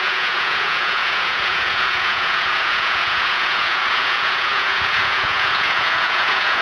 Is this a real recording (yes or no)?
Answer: no